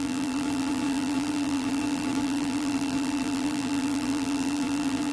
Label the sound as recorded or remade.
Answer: remade